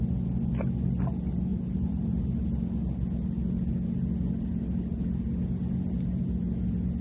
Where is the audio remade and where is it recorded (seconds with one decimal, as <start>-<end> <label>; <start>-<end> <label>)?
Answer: 0.0-1.5 recorded; 1.5-2.4 remade; 2.4-7.0 recorded